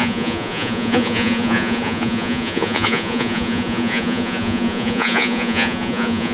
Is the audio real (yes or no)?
no